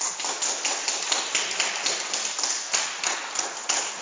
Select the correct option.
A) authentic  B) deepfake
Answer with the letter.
A